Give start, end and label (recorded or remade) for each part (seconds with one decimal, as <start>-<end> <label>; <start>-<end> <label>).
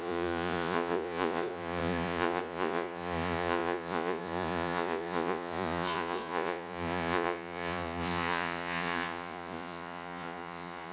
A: 0.0-10.9 remade